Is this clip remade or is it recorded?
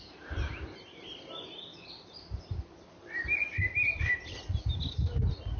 remade